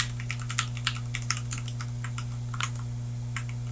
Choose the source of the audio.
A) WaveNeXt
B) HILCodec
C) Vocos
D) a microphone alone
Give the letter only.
D